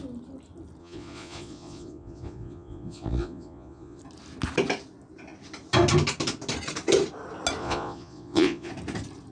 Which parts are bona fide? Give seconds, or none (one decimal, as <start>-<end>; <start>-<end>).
0.0-0.8; 4.0-7.6; 8.7-9.3